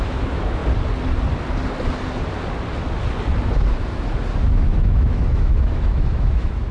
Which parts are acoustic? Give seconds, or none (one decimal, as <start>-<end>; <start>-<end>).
0.6-4.5